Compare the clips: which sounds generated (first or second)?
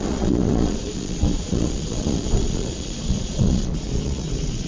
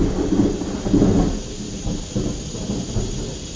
first